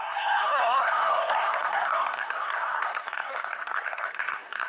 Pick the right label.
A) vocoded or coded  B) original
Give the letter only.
A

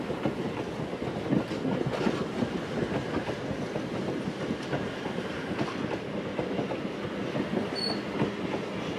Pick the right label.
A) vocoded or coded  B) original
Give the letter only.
B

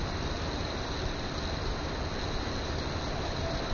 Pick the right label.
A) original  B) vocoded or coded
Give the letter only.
A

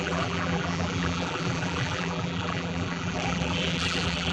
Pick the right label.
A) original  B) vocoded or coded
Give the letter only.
B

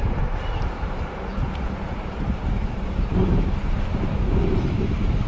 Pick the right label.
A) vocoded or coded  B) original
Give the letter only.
A